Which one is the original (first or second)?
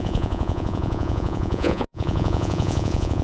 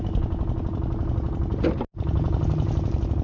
second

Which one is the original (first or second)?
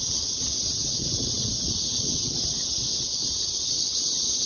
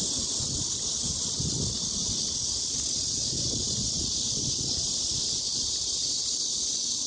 second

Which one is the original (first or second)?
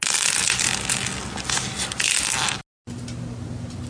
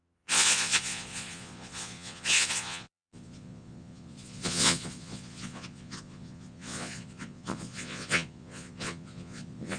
first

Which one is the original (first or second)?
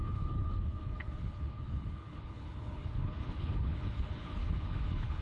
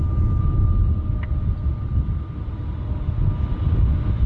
second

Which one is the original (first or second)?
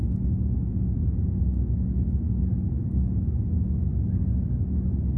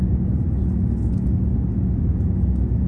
second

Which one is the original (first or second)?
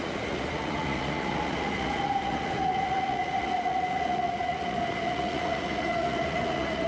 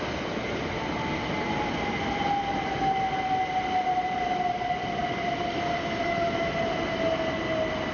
second